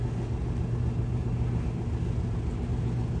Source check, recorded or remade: recorded